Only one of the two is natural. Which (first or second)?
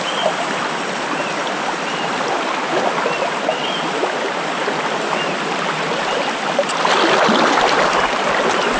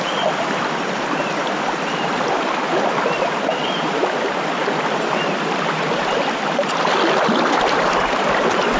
first